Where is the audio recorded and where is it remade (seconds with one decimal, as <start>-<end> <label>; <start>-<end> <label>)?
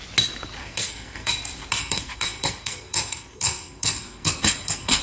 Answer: 0.0-0.6 recorded; 0.6-1.3 remade; 1.3-1.8 recorded; 1.8-5.0 remade